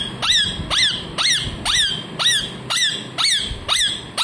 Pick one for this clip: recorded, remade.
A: recorded